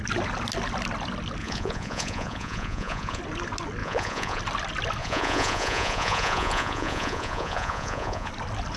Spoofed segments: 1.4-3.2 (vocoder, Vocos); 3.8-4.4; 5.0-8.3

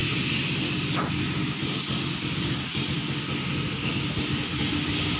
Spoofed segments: none

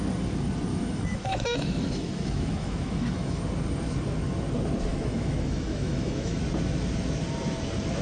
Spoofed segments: 0.7-3.4 (autoencoder, DAC-VAE); 4.9-6.4